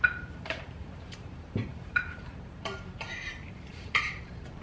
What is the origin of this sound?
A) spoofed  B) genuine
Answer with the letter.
A